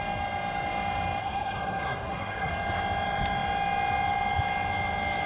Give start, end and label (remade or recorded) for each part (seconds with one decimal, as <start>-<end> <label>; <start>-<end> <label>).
0.0-1.2 recorded; 1.2-2.5 remade; 2.5-5.3 recorded